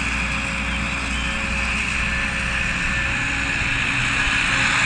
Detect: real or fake real